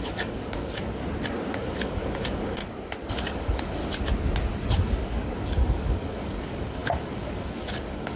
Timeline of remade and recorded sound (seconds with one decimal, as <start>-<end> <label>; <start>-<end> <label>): 0.0-1.0 remade; 1.0-1.5 recorded; 1.5-2.6 remade; 2.6-3.1 recorded; 3.1-3.8 remade; 3.8-4.7 recorded; 4.7-8.2 remade